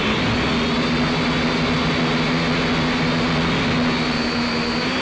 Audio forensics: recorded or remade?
recorded